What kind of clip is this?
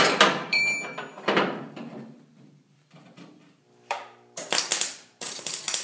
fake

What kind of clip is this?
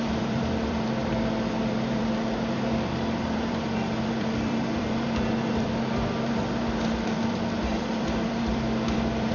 fake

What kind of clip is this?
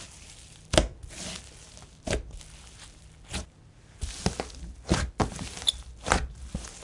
real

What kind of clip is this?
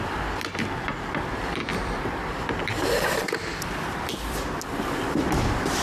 fake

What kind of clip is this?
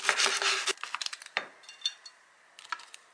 real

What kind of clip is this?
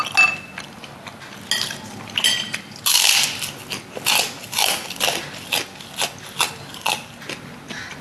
real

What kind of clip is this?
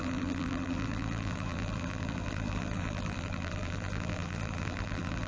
fake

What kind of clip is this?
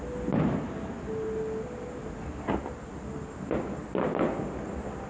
real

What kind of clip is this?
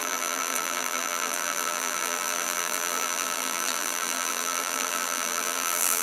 fake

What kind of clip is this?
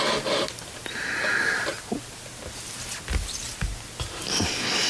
real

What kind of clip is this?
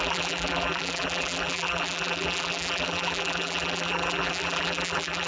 fake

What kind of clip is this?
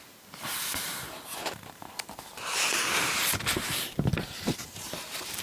fake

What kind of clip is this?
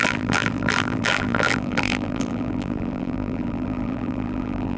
fake